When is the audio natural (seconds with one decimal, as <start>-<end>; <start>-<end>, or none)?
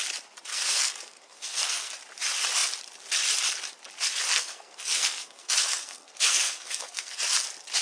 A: 0.0-0.5; 1.9-4.3; 7.2-7.8